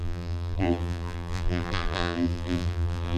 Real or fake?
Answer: fake